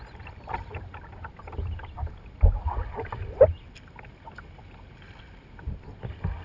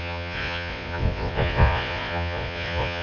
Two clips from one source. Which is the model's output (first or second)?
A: second